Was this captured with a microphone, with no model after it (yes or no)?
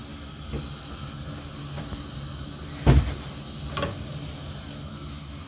yes